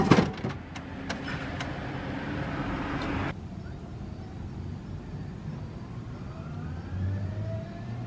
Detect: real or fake real